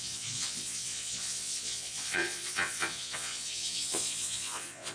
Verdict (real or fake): fake